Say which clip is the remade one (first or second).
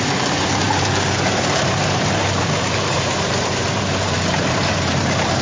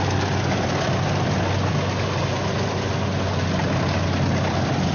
first